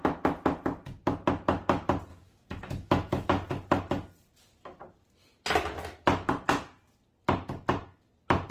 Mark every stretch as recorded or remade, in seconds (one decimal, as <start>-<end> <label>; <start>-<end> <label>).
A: 0.0-2.1 recorded; 2.1-3.3 remade; 3.3-8.5 recorded